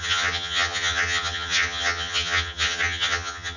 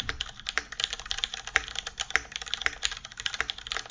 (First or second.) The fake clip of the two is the first